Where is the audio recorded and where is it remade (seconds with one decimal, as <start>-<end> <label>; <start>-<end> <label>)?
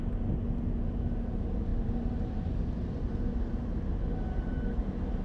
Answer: 0.0-5.2 recorded